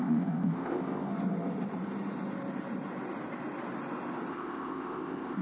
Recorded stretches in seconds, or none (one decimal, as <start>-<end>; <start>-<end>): 1.1-4.3